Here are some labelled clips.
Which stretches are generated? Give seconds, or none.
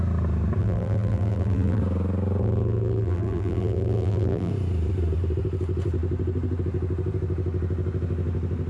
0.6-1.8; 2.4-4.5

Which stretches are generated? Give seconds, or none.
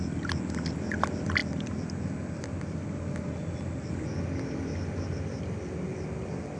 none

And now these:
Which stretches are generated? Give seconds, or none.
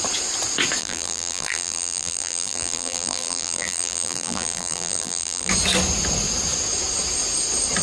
0.8-5.5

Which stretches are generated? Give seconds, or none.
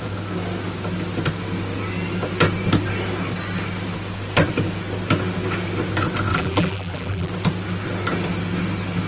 6.3-7.3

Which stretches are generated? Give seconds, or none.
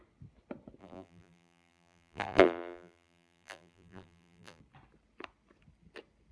0.8-4.6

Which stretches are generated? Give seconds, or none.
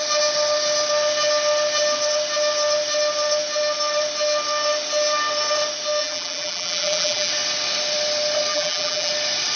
6.0-7.3; 8.5-9.1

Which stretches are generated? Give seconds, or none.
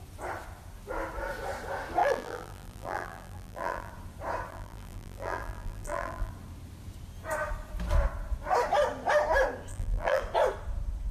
2.0-3.9; 4.5-6.3; 9.7-10.2